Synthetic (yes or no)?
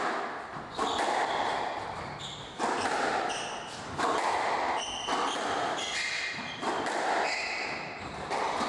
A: no